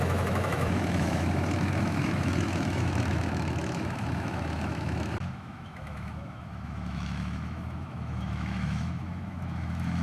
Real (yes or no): no